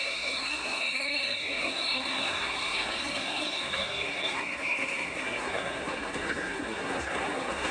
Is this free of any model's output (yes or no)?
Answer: no